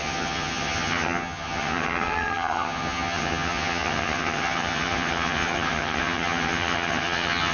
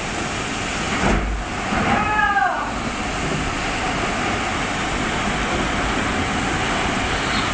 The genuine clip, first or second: second